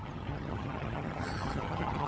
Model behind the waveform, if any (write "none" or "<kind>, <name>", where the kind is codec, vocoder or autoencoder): vocoder, HiFi-GAN